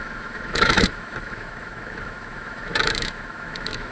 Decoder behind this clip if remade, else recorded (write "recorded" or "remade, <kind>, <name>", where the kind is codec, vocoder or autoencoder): remade, autoencoder, DAC-VAE